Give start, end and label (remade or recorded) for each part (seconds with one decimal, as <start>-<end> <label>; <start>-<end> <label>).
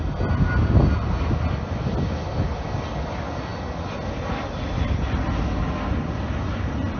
0.0-7.0 recorded